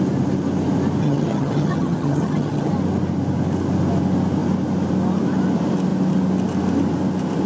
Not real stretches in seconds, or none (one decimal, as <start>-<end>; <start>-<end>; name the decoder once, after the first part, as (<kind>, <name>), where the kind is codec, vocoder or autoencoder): 1.0-2.7 (vocoder, HiFi-GAN)